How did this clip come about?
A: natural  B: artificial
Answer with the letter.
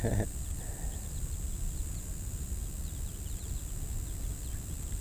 A